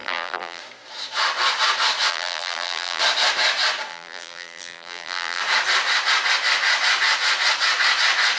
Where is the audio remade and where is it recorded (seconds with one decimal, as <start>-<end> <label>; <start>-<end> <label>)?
0.0-0.6 remade; 0.6-2.1 recorded; 2.1-3.0 remade; 3.0-3.9 recorded; 3.9-5.4 remade; 5.4-8.4 recorded